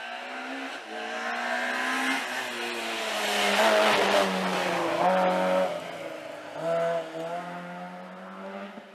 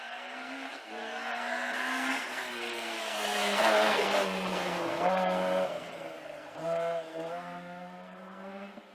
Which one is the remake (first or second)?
second